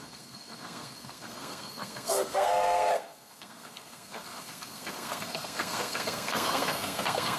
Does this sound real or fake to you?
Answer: fake